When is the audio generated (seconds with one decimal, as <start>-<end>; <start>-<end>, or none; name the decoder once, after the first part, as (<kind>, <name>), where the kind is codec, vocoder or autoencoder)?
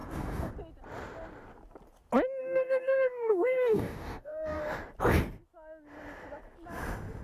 0.0-0.5 (codec, DAC); 2.4-4.6